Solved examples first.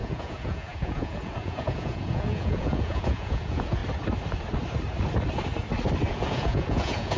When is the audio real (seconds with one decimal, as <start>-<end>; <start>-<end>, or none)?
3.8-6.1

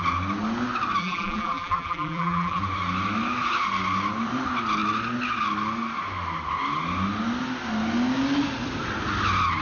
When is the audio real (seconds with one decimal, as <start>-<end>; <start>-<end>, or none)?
0.0-1.0; 2.6-9.6

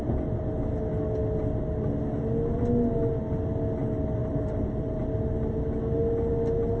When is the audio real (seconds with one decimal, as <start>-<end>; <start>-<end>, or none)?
0.0-4.2; 5.0-6.8